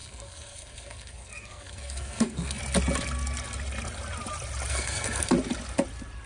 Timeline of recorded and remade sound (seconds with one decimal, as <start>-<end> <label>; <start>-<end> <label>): 0.0-2.6 remade; 2.6-4.7 recorded; 4.7-5.3 remade; 5.3-6.3 recorded